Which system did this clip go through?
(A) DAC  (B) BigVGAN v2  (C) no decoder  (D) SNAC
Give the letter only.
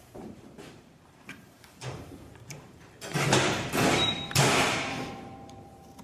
B